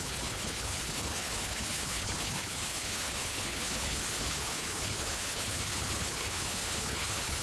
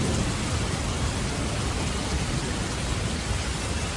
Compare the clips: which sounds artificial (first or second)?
first